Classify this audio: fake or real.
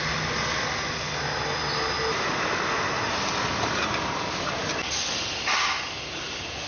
real